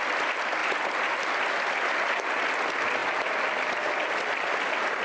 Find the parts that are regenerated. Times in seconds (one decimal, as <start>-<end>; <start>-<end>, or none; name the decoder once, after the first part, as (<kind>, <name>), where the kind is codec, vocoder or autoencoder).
none